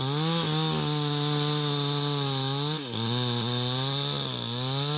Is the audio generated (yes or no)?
no